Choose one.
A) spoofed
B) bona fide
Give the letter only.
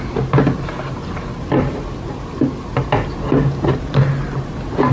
B